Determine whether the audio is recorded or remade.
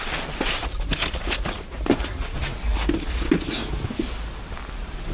recorded